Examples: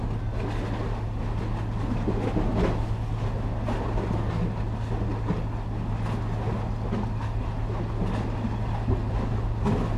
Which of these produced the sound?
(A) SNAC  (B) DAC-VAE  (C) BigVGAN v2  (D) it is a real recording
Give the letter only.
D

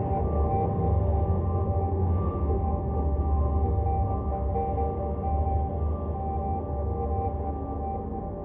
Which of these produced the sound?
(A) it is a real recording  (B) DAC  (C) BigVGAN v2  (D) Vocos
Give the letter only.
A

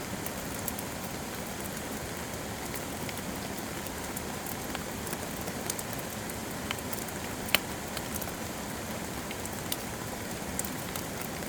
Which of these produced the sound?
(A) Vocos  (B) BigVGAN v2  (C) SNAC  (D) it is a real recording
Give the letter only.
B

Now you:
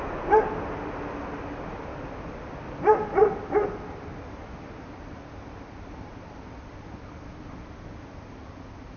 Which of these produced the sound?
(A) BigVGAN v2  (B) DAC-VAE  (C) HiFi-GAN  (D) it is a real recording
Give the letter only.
D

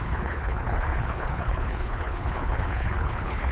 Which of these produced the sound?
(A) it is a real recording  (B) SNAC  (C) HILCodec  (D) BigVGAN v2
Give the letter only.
C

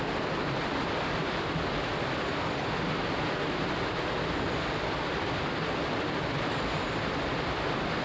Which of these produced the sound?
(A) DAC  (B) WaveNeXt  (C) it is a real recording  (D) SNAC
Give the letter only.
C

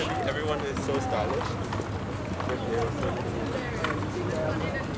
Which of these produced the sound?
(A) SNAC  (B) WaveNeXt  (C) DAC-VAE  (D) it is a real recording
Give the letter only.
D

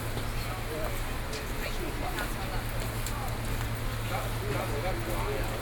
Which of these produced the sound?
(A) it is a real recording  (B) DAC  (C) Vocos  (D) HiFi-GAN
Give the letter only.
A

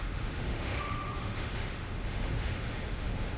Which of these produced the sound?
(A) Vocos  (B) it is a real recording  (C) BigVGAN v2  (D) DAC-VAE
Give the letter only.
D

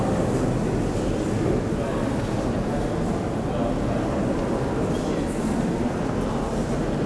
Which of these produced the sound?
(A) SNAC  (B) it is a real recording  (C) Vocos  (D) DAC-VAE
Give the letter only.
B